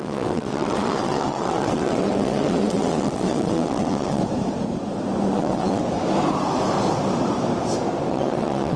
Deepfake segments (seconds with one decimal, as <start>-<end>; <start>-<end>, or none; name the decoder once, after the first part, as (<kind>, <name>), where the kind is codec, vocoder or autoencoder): 0.0-4.2 (vocoder, WaveNeXt); 5.3-5.8; 8.1-8.8